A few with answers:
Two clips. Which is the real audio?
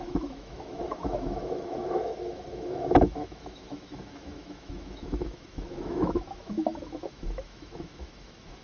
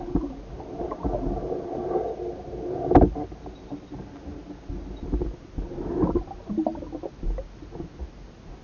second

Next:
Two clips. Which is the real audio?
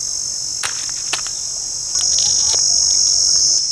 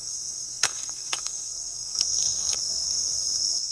first